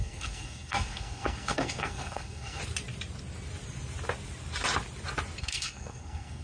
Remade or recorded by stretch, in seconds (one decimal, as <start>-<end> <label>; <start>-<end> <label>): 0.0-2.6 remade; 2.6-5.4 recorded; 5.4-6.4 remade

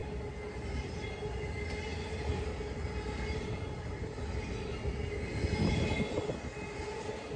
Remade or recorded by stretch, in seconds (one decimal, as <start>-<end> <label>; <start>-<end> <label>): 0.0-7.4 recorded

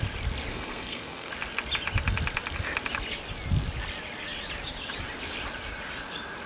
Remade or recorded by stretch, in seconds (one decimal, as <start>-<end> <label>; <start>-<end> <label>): 0.0-0.5 recorded; 0.5-1.3 remade; 1.3-6.5 recorded